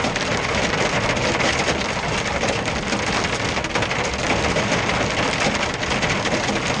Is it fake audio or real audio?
real